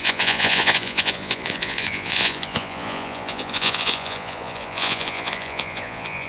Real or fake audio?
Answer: fake